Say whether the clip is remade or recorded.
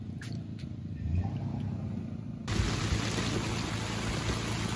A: recorded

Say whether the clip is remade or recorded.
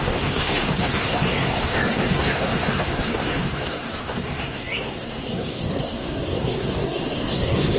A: remade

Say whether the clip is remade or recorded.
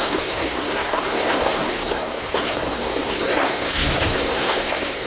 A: remade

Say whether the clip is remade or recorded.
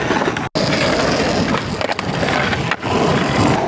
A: recorded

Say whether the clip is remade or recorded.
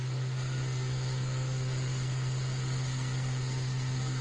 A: remade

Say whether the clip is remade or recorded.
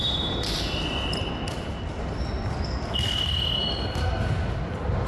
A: recorded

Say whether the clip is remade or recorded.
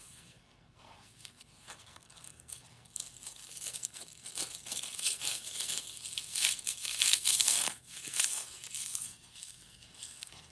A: remade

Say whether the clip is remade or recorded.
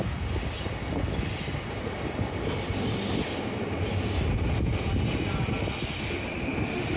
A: recorded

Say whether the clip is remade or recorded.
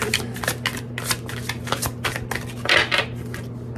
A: recorded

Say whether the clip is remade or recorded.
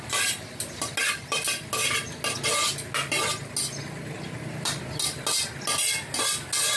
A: recorded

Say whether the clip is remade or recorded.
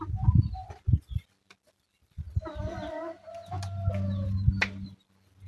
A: recorded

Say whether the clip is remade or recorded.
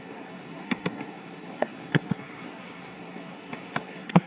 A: remade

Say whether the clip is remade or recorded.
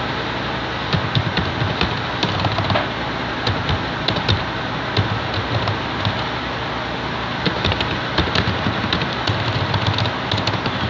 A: recorded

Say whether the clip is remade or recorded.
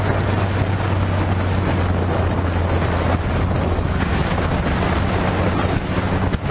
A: recorded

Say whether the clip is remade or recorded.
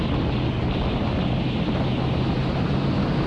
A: recorded